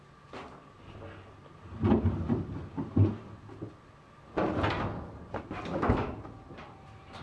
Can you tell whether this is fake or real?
real